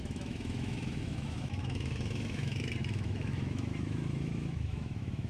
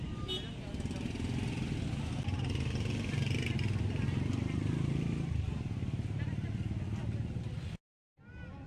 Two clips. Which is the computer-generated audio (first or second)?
first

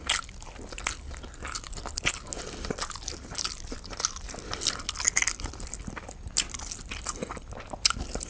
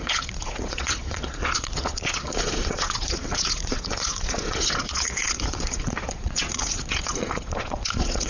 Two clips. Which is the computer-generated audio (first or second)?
second